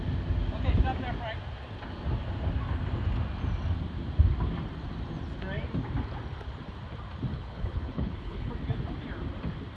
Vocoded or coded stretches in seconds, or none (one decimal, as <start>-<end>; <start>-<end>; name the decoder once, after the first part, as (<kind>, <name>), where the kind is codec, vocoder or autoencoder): 7.3-8.5 (codec, HILCodec)